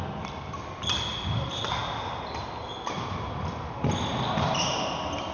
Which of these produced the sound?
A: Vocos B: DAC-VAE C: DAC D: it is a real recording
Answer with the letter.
D